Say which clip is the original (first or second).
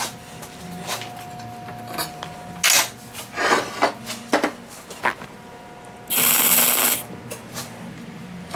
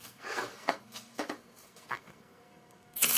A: first